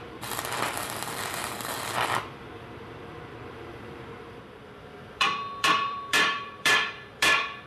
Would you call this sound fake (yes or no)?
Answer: yes